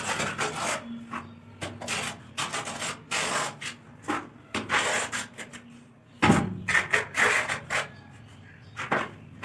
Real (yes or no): yes